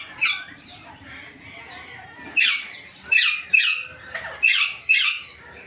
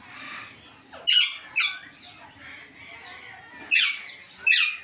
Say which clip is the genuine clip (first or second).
second